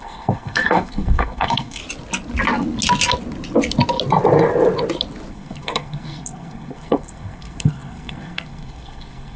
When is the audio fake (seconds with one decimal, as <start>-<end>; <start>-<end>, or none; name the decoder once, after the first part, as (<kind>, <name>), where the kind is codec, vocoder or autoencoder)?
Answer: 0.0-1.8 (codec, SNAC); 5.3-9.4

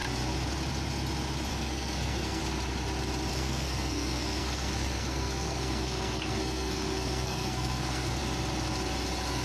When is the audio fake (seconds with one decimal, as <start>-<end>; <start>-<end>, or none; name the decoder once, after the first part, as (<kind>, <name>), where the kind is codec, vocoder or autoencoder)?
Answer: 1.5-2.4 (codec, SNAC); 3.3-8.2

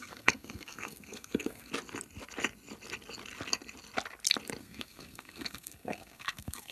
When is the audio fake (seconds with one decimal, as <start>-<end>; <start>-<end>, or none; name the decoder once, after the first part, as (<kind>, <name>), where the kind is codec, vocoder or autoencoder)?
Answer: 0.0-1.7 (codec, SNAC); 4.6-6.7

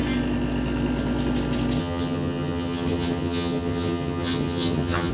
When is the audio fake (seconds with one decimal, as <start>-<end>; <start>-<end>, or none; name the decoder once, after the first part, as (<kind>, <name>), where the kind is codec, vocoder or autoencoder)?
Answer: 1.8-5.1 (vocoder, HiFi-GAN)

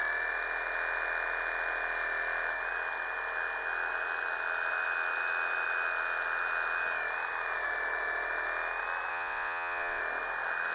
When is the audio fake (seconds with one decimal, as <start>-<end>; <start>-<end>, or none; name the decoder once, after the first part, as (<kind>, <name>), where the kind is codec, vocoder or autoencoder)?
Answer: 9.1-10.0 (vocoder, WaveNeXt)

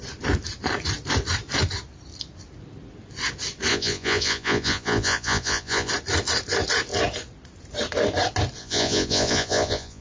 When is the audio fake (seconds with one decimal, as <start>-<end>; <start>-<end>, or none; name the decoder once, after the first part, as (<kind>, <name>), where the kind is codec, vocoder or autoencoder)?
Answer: 3.7-5.9 (vocoder, Vocos); 8.6-10.0